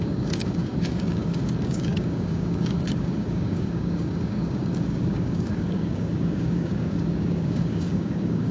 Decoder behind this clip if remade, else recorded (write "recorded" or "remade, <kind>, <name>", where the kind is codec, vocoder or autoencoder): remade, codec, DAC